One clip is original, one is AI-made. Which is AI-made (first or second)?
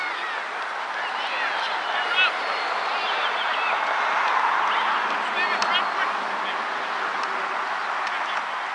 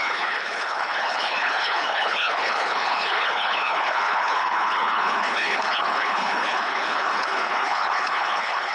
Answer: second